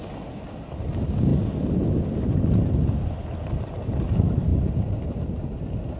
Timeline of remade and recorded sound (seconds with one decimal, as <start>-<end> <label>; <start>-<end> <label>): 0.0-6.0 recorded